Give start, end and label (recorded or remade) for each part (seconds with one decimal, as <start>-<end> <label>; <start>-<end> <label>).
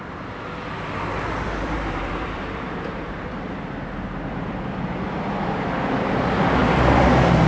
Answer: 0.0-1.1 recorded; 1.1-3.6 remade; 3.6-6.6 recorded; 6.6-7.5 remade